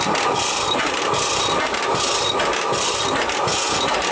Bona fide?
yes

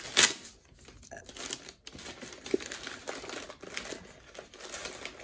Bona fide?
yes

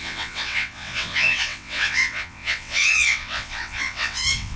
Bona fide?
no